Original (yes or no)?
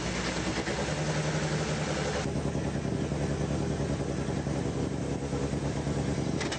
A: yes